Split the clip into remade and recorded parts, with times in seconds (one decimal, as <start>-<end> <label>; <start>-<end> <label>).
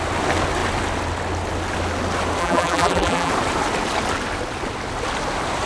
0.0-2.4 recorded; 2.4-3.3 remade; 3.3-5.7 recorded